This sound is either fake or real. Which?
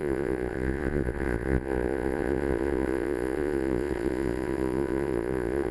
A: fake